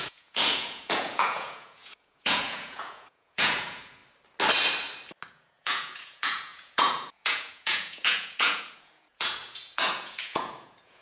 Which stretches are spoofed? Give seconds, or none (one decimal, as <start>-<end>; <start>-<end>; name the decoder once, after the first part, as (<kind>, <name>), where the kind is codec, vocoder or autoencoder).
0.0-4.0 (vocoder, Vocos); 5.3-11.0